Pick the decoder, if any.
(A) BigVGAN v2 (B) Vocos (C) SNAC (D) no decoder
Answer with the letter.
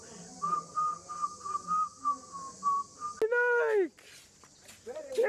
D